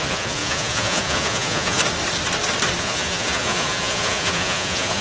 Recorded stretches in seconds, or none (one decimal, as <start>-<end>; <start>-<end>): 1.8-2.8